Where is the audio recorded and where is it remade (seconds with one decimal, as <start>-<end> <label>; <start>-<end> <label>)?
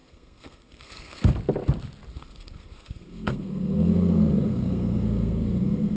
0.0-1.3 remade; 1.3-2.1 recorded; 2.1-6.0 remade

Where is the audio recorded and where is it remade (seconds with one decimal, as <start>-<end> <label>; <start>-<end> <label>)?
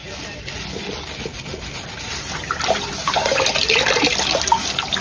0.0-5.0 recorded